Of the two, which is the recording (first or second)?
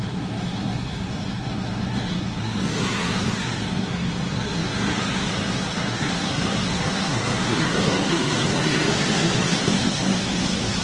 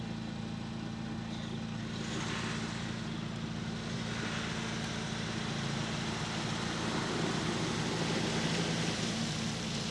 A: second